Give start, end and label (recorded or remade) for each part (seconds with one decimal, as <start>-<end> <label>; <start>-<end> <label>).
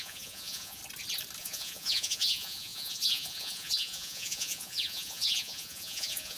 0.0-0.8 remade; 0.8-1.4 recorded; 1.4-6.4 remade